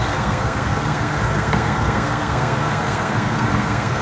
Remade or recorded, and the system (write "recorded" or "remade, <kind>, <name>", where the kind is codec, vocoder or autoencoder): remade, codec, SNAC